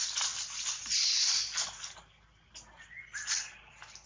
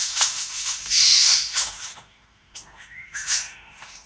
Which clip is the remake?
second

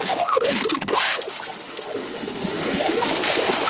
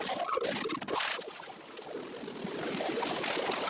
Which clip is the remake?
first